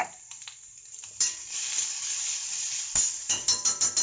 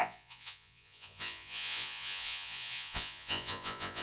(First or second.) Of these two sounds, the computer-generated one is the second